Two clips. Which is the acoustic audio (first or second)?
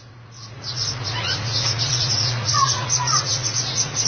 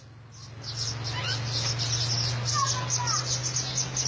second